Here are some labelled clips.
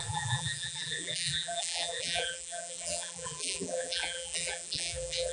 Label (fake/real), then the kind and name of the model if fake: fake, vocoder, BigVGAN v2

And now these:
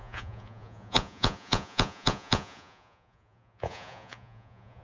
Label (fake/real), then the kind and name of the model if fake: fake, vocoder, Vocos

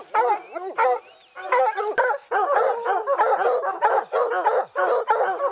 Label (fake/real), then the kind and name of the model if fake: real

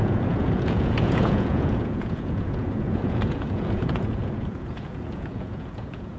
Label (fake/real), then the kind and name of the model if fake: fake, vocoder, Vocos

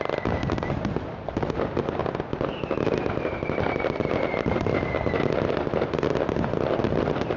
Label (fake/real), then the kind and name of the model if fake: real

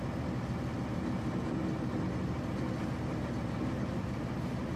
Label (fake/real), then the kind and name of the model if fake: real